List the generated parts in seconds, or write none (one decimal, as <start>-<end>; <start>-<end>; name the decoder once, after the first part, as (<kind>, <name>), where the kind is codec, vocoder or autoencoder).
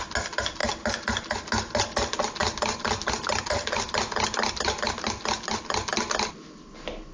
none